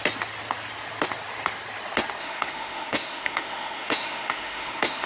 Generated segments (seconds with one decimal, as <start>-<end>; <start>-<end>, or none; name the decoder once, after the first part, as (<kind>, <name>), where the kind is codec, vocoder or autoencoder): 2.2-5.1 (autoencoder, DAC-VAE)